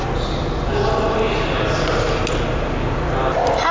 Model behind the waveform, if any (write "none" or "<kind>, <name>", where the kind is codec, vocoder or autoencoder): none